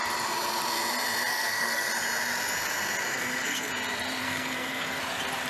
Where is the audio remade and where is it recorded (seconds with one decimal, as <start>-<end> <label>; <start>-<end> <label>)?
0.0-1.3 recorded; 1.3-1.9 remade; 1.9-3.1 recorded; 3.1-3.7 remade; 3.7-4.2 recorded; 4.2-5.0 remade; 5.0-5.5 recorded